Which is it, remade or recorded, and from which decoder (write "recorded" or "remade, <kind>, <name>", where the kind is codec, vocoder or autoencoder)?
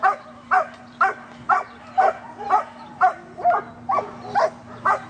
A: recorded